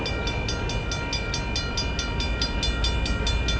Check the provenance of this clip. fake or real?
real